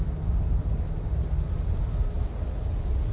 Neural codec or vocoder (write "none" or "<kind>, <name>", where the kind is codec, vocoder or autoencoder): none